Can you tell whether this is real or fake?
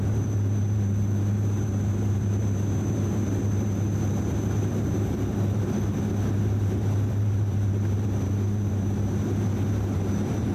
fake